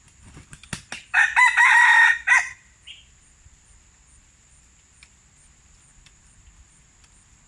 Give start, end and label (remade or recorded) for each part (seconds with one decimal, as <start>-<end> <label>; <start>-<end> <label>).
0.0-7.5 recorded

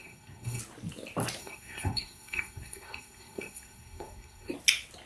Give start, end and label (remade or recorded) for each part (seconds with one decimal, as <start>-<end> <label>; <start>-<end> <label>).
0.0-0.6 remade; 0.6-1.4 recorded; 1.4-4.5 remade; 4.5-5.1 recorded

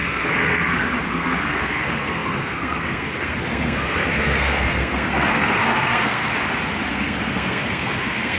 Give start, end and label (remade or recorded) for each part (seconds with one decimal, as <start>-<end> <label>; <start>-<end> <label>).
0.0-6.3 remade; 6.3-6.9 recorded; 6.9-8.4 remade